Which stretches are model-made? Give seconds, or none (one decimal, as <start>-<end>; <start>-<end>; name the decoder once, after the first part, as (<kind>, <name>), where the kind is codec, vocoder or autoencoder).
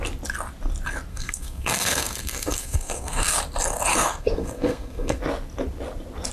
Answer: 1.1-3.4 (codec, SNAC); 3.9-5.2